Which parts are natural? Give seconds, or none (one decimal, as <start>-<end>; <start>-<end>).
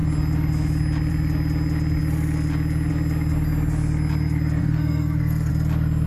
0.0-4.6; 5.5-6.1